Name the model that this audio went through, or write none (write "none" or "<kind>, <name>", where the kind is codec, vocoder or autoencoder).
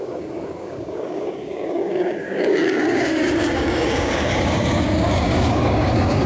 codec, DAC